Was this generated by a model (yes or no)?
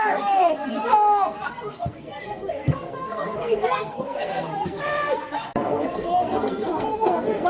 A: yes